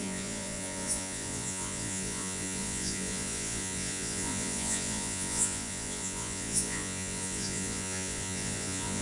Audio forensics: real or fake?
fake